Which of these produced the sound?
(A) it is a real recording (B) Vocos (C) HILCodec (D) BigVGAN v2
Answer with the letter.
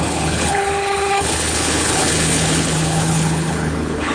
C